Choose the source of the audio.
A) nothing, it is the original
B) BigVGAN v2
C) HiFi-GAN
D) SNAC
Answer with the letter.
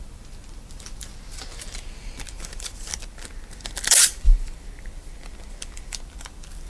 B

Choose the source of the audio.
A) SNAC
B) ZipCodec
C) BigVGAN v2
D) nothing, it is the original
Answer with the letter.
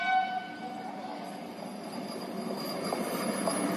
D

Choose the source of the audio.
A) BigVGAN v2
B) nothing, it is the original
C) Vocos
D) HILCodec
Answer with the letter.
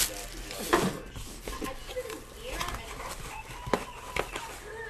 B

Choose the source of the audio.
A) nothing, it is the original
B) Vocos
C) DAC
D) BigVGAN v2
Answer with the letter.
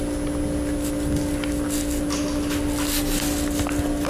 A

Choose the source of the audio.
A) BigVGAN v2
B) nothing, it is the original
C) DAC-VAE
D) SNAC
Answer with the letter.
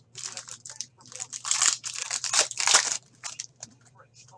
A